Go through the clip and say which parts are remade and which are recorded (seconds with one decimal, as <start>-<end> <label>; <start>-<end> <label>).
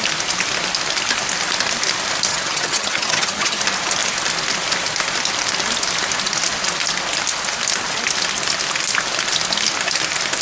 0.0-2.3 recorded; 2.3-3.6 remade; 3.6-10.4 recorded